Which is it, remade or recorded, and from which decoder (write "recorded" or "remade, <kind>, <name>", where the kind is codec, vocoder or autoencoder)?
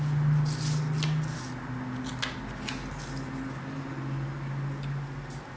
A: recorded